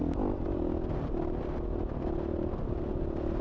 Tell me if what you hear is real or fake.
real